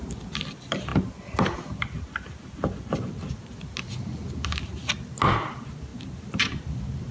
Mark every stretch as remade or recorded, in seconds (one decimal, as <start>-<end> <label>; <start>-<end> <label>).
0.0-7.1 recorded